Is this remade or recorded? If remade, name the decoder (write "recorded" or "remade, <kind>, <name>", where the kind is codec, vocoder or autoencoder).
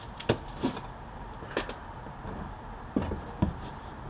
recorded